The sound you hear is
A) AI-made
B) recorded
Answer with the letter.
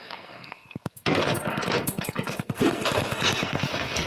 A